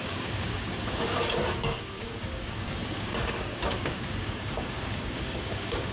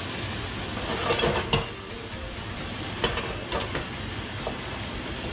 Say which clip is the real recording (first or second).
second